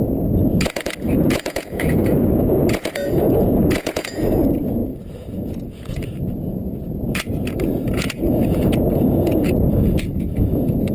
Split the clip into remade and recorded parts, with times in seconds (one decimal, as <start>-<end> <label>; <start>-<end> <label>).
0.0-10.9 remade